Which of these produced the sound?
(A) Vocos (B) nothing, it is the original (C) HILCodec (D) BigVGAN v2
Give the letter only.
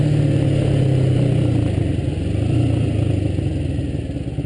B